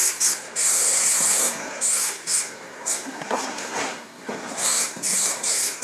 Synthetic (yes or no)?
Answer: yes